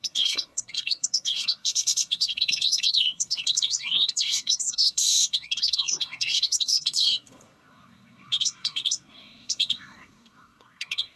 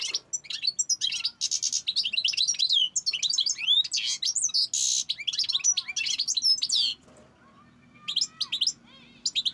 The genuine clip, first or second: second